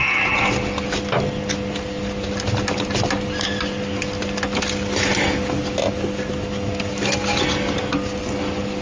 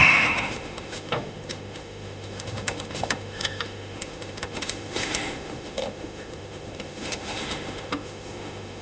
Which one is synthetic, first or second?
second